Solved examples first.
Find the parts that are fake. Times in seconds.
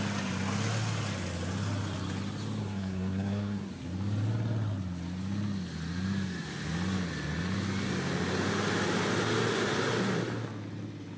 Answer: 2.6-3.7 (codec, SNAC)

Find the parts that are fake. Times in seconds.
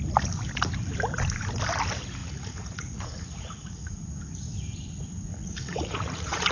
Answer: 2.2-4.0 (vocoder, Vocos); 5.3-6.5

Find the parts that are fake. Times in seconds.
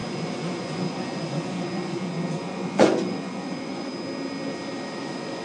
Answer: 0.0-3.9 (vocoder, Vocos); 5.0-5.4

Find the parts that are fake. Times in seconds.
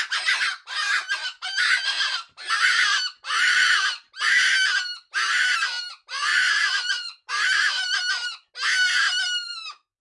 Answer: 6.3-7.3 (vocoder, Vocos)